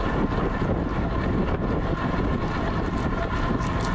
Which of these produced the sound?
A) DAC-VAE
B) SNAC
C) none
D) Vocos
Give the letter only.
C